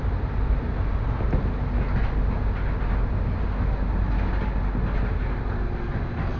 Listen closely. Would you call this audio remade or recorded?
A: recorded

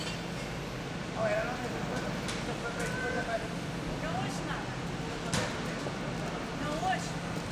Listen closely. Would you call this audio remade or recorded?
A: recorded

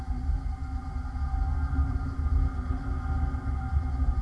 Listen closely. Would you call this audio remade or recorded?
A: recorded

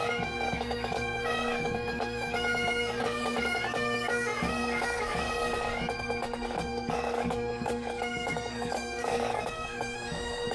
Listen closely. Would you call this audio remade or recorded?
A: remade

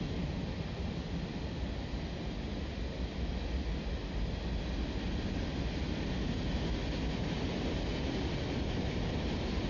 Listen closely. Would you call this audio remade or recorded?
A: recorded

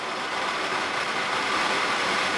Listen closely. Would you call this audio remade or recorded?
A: remade